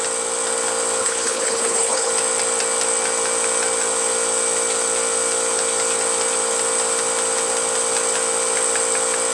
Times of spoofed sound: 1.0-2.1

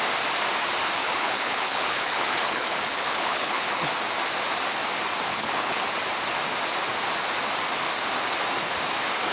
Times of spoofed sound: 1.0-3.9; 5.3-5.9

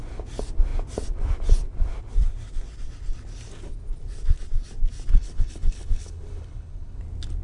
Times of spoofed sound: 5.1-7.0

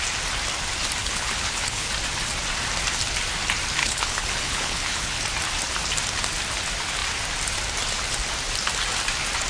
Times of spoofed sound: 1.0-1.9; 3.8-5.2

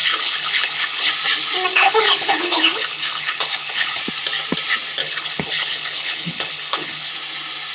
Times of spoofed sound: 0.0-1.1; 1.7-4.0; 5.0-7.1